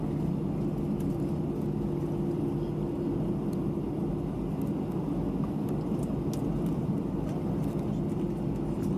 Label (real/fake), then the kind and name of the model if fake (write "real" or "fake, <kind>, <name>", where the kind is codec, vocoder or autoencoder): real